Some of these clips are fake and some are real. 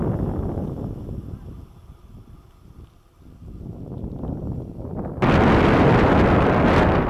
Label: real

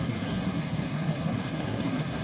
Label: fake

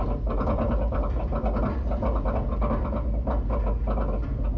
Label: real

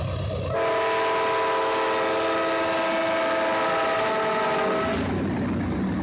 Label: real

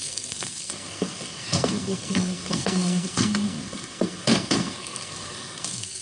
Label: fake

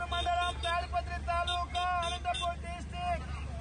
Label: real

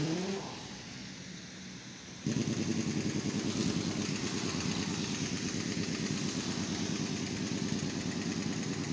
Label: real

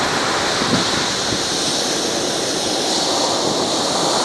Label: real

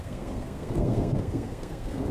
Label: fake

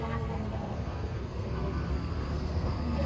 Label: fake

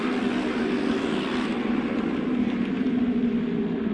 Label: real